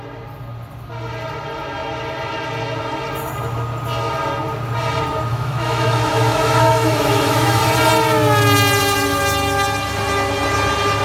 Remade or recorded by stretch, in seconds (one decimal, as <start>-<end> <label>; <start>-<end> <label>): 0.0-5.3 recorded; 5.3-7.6 remade; 7.6-11.0 recorded